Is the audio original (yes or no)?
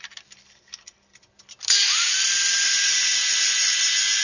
yes